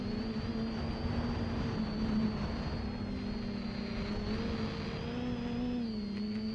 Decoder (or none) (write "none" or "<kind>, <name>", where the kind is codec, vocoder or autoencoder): none